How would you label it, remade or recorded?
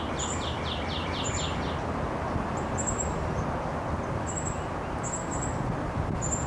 recorded